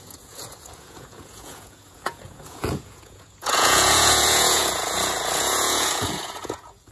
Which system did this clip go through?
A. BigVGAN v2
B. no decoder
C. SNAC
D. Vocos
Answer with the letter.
D